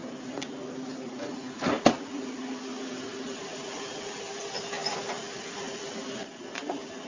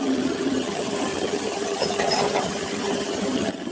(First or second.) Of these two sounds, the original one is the first